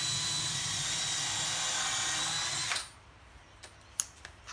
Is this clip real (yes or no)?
yes